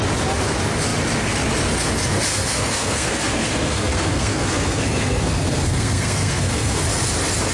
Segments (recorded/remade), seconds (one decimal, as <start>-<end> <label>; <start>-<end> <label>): 0.0-2.3 recorded; 2.3-6.8 remade; 6.8-7.5 recorded